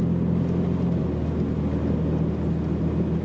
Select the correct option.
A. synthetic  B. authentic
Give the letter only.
B